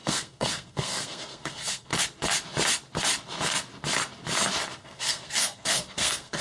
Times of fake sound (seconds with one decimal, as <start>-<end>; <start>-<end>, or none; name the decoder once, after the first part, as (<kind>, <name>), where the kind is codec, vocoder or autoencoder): 0.0-1.9 (codec, SNAC); 4.8-6.4